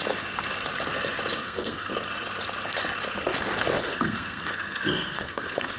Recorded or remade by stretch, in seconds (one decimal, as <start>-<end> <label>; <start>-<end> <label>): 0.0-1.4 recorded; 1.4-1.9 remade; 1.9-3.8 recorded; 3.8-5.8 remade